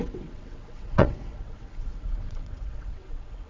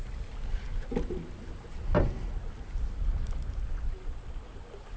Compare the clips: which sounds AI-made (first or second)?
first